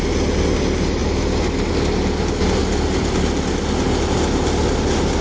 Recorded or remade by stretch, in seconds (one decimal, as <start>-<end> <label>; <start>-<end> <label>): 0.0-5.2 recorded